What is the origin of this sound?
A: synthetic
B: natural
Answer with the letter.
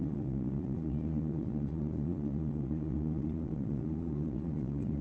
A